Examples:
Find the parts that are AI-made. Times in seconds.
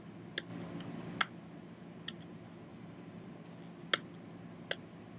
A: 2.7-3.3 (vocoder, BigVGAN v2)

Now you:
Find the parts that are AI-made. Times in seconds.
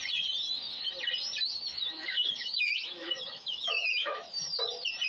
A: 1.7-4.6 (autoencoder, DAC-VAE)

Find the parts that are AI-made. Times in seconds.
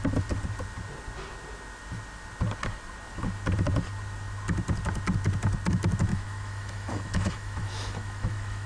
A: 6.1-8.7 (autoencoder, DAC-VAE)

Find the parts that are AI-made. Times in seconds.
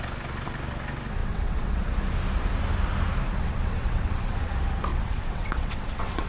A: 1.2-1.8 (vocoder, WaveNeXt); 3.4-4.5; 4.9-6.3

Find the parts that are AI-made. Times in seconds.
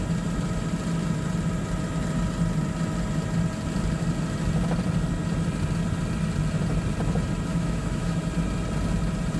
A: 7.5-8.2 (autoencoder, DAC-VAE)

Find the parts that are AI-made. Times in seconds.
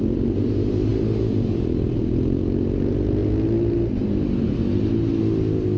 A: none